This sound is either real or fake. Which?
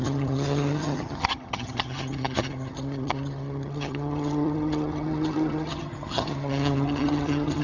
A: fake